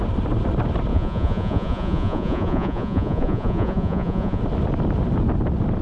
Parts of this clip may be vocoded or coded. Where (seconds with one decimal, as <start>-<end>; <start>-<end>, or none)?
0.9-4.4